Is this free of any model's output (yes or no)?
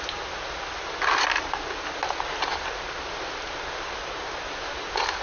yes